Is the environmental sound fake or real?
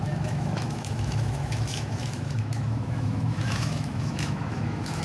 fake